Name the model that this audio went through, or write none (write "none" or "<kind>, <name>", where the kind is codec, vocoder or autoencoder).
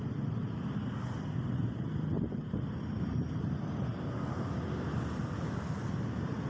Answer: none